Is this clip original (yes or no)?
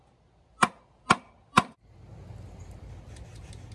yes